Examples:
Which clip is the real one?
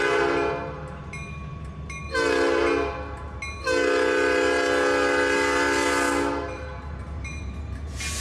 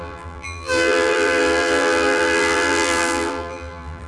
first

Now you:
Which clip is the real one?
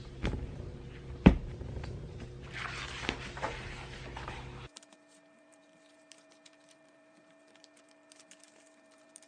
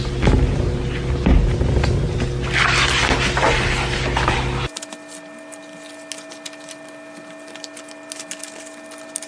second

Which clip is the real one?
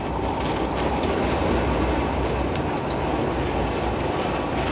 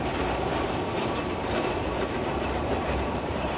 first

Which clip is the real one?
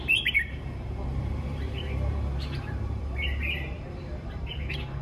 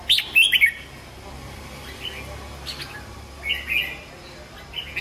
second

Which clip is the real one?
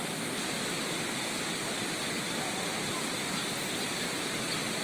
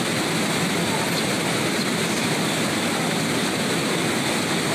second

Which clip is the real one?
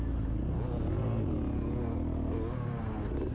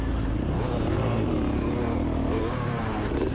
first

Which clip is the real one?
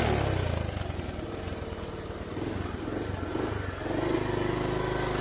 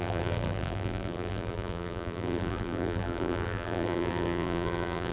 first